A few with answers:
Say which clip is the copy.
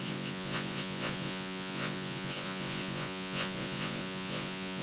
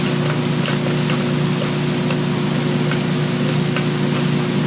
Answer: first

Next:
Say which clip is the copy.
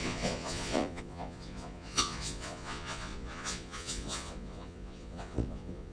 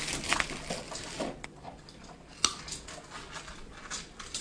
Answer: first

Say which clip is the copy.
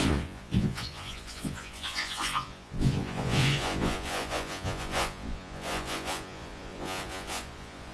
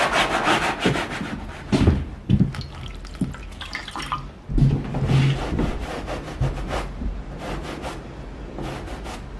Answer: first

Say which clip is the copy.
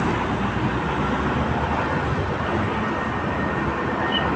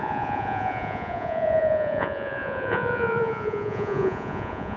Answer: second